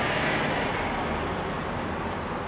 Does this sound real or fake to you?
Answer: real